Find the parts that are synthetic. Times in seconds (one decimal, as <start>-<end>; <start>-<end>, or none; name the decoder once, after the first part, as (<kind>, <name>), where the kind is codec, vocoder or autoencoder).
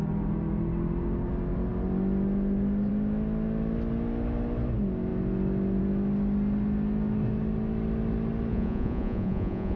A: 8.5-9.8 (vocoder, Vocos)